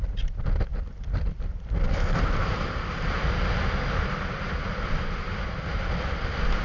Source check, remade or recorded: recorded